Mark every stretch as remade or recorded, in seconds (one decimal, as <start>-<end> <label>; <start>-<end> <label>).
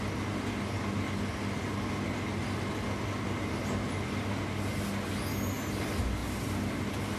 0.0-7.2 recorded